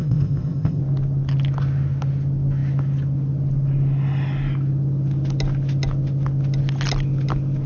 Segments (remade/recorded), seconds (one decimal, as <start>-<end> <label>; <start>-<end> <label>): 0.0-0.8 remade; 0.8-7.7 recorded